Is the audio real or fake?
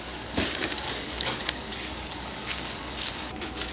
fake